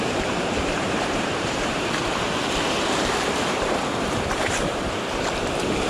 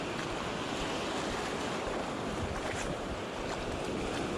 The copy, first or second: first